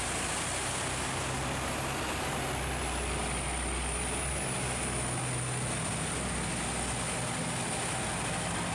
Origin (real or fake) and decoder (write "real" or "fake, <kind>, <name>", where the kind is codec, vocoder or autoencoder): real